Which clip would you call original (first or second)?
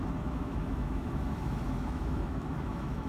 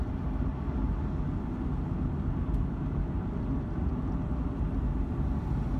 second